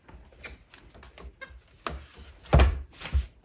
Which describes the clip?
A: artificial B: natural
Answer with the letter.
B